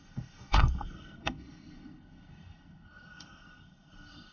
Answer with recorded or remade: remade